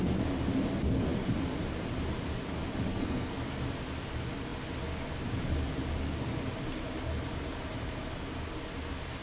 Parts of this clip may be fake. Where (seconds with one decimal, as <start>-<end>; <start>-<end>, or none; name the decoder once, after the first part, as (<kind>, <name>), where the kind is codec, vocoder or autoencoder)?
2.9-3.5 (codec, SNAC)